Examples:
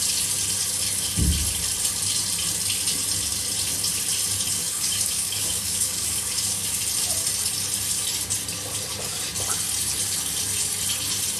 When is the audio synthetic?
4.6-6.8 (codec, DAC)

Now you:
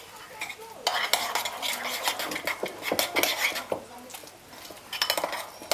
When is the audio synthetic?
none

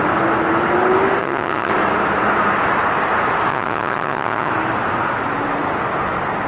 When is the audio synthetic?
1.2-1.7 (vocoder, HiFi-GAN); 3.5-4.5

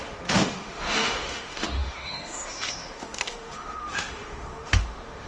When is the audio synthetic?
0.0-5.3 (autoencoder, DAC-VAE)

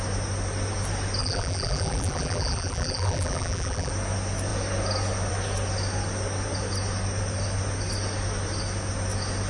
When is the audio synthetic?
1.2-3.9 (vocoder, BigVGAN v2)